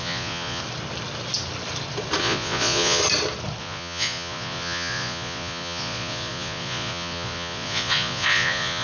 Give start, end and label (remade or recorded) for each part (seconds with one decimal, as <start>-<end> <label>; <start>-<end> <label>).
0.0-0.6 remade; 0.6-2.2 recorded; 2.2-3.0 remade; 3.0-3.6 recorded; 3.6-8.8 remade

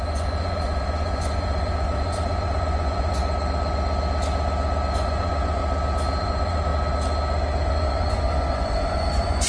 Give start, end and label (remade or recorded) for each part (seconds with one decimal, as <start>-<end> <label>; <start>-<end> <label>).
0.0-3.2 remade; 3.2-4.9 recorded; 4.9-5.6 remade; 5.6-6.2 recorded; 6.2-6.7 remade; 6.7-7.7 recorded; 7.7-9.5 remade

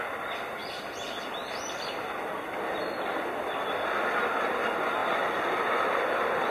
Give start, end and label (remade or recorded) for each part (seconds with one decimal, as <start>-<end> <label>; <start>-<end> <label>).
0.0-6.5 recorded

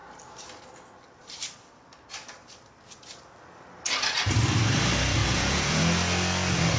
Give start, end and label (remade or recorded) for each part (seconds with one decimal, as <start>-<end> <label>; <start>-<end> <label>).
0.0-5.2 recorded; 5.2-5.8 remade; 5.8-6.8 recorded